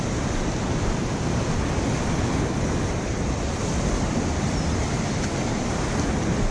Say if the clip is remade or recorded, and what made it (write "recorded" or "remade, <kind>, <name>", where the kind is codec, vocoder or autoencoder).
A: recorded